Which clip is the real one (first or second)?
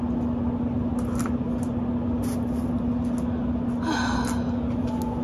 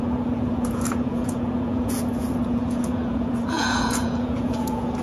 first